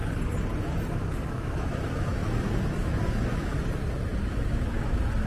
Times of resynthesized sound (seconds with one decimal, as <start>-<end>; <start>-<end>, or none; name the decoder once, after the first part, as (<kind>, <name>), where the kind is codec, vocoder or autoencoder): 1.3-3.5 (autoencoder, DAC-VAE); 4.3-5.3